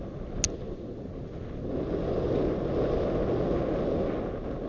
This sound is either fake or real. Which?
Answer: real